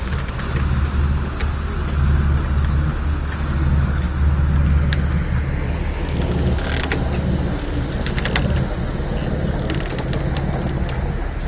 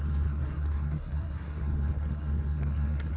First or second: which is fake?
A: second